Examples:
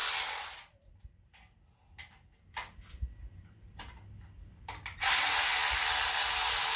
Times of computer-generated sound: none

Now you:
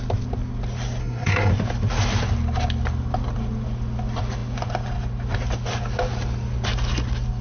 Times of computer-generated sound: 1.0-1.5 (codec, SNAC)